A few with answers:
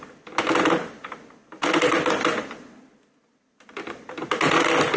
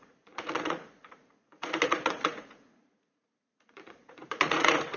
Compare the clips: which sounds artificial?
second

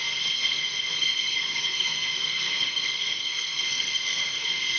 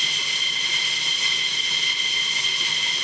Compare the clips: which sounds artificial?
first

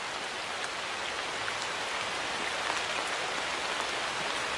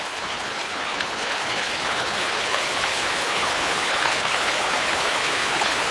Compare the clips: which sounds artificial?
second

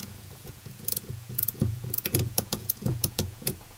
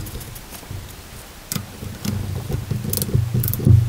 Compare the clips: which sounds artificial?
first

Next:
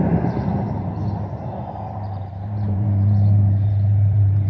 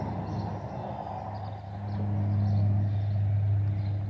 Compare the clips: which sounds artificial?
first